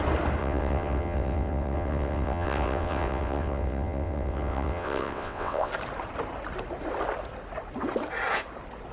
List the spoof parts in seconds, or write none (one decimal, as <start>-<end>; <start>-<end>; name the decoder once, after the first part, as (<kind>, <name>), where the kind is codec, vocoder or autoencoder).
0.4-5.7 (vocoder, WaveNeXt)